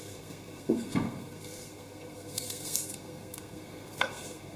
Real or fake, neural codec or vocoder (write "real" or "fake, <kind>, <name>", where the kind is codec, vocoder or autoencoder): fake, codec, SNAC